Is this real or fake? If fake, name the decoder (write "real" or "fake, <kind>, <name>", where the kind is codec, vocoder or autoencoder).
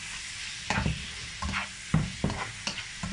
real